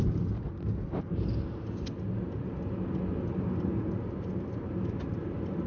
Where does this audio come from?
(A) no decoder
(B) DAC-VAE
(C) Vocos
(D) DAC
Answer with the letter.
A